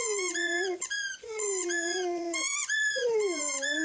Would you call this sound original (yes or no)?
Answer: no